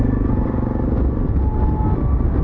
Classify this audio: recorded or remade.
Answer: recorded